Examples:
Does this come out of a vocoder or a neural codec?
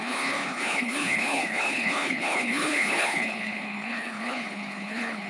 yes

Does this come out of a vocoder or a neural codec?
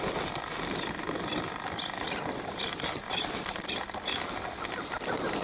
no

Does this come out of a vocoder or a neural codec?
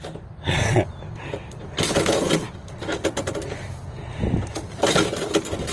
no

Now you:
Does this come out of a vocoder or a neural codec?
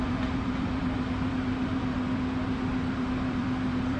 yes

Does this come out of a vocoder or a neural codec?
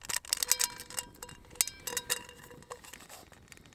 no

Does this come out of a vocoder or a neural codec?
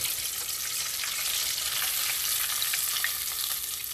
no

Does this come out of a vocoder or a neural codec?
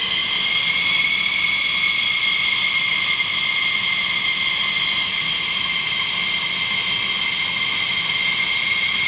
no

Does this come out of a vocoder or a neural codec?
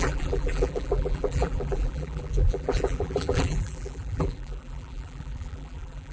yes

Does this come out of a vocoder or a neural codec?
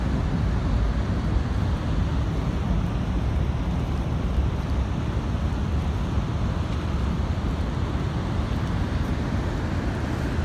no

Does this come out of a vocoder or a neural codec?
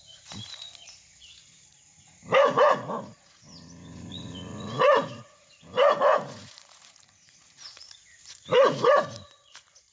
yes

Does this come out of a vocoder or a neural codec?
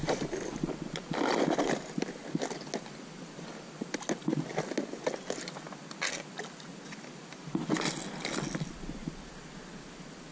no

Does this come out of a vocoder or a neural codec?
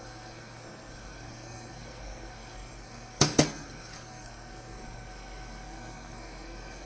yes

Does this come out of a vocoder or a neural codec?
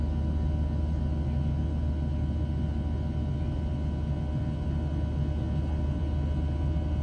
no